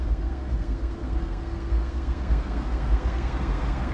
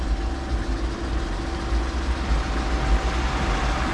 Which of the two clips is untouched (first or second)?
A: second